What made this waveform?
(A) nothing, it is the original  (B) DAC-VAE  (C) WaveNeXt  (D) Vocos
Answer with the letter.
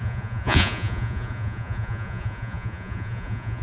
D